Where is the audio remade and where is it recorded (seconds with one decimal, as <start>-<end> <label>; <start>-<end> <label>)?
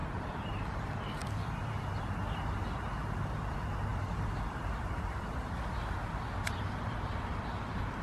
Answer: 0.0-0.7 remade; 0.7-3.9 recorded; 3.9-8.0 remade